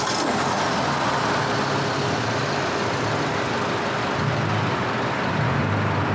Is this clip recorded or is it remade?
recorded